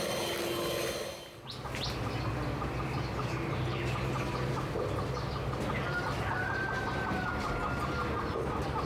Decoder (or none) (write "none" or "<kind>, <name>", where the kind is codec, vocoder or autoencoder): none